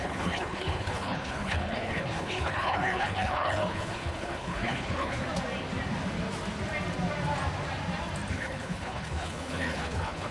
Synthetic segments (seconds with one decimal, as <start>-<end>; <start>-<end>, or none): 0.0-5.2; 8.3-10.3